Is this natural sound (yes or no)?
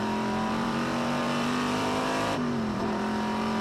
no